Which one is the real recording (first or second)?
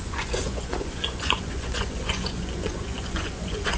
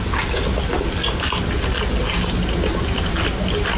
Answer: second